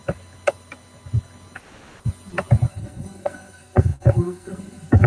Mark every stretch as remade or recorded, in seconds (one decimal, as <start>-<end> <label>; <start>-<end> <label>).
0.0-2.7 recorded; 2.7-5.1 remade